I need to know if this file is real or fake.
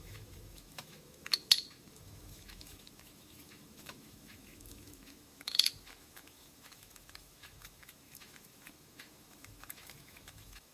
fake